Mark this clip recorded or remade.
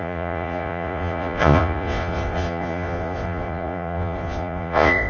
remade